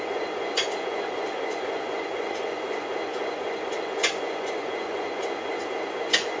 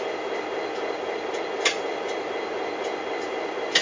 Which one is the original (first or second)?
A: second